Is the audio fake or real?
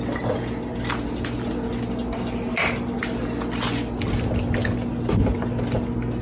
real